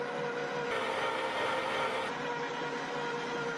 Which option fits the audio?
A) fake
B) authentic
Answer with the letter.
B